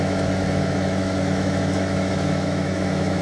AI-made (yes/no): yes